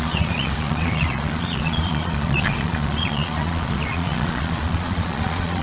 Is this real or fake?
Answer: fake